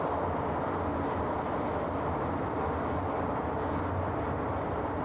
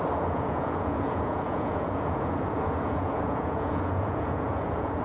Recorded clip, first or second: first